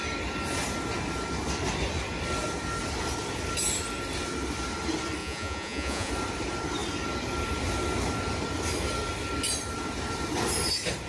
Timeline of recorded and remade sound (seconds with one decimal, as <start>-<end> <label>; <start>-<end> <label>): 0.0-5.2 recorded; 5.2-6.1 remade; 6.1-11.1 recorded